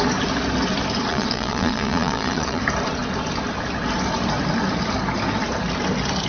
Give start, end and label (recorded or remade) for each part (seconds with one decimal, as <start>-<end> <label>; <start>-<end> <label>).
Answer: 0.0-1.1 recorded; 1.1-2.6 remade; 2.6-6.3 recorded